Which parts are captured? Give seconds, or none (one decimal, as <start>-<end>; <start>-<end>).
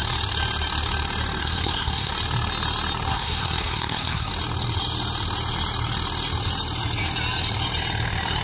0.0-1.4; 2.1-3.1; 4.3-8.4